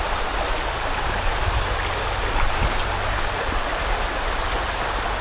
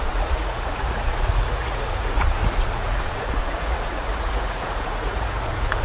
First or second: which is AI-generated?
second